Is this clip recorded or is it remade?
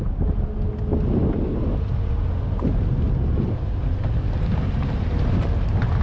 recorded